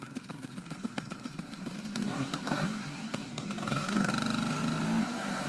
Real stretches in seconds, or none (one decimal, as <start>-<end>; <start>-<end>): 4.1-5.0